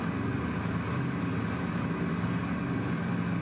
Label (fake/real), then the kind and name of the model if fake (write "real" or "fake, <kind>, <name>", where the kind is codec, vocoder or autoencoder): real